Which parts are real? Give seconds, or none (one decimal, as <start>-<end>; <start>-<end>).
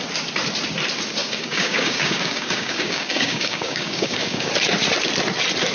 0.0-1.2; 4.5-5.7